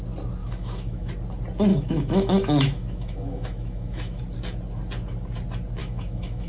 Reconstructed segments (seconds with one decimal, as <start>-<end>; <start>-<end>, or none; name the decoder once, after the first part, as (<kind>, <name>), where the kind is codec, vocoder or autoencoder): 0.4-1.1 (autoencoder, DAC-VAE); 1.7-4.2; 5.8-6.5